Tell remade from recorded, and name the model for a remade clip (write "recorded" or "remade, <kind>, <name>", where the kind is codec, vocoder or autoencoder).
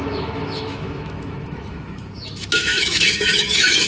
remade, autoencoder, DAC-VAE